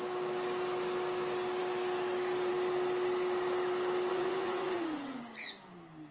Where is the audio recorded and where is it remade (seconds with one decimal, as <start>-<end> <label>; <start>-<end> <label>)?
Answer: 0.0-4.1 recorded; 4.1-5.2 remade; 5.2-6.1 recorded